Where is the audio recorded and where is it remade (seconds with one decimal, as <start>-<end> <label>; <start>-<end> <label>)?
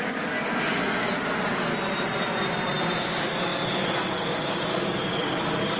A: 0.0-1.7 remade; 1.7-3.0 recorded; 3.0-5.8 remade